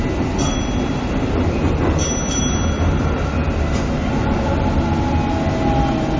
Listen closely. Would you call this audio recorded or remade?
recorded